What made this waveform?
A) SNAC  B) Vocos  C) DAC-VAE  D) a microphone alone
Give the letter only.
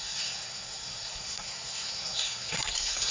A